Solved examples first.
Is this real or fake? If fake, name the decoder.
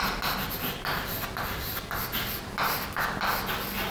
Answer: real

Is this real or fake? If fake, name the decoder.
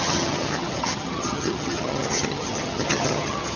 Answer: fake, vocoder, HiFi-GAN